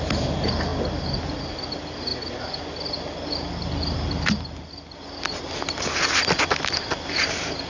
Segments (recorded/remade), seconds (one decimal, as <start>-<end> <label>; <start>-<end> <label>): 0.0-7.7 recorded